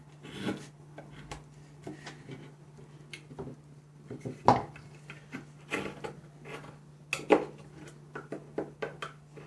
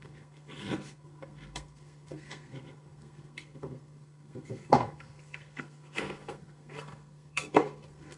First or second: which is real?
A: first